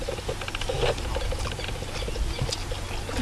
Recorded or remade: recorded